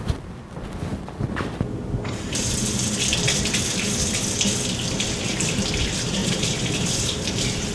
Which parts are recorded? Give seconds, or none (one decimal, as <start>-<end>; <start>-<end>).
0.0-6.2